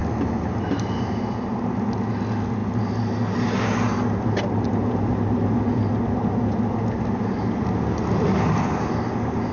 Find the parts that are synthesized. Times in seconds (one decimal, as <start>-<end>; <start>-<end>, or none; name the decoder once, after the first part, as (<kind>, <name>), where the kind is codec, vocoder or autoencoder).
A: none